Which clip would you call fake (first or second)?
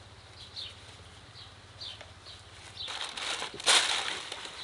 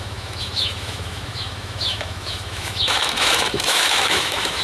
second